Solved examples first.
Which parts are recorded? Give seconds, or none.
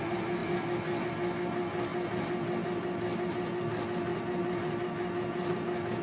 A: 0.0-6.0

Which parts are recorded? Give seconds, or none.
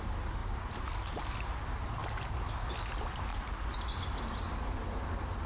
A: 0.0-5.5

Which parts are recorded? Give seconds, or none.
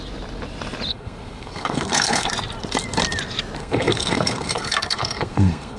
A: 0.0-0.9; 2.3-3.6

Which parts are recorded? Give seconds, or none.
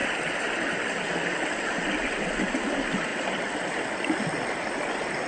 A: 1.0-3.1; 4.2-5.3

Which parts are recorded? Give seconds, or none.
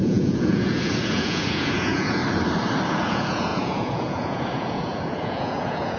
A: 2.2-2.9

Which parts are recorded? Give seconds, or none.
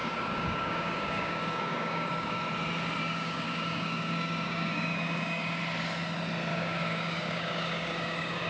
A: 2.4-3.0; 5.6-6.5